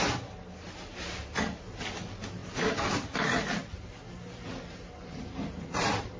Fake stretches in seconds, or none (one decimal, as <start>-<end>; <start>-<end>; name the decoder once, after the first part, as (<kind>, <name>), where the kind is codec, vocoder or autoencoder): none